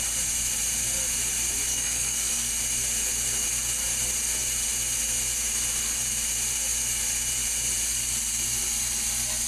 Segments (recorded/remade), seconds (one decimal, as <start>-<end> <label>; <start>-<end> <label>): 0.0-1.7 recorded; 1.7-2.5 remade; 2.5-9.5 recorded